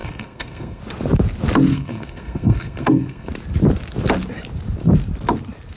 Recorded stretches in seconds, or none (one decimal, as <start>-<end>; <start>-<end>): 0.8-1.7; 3.3-5.8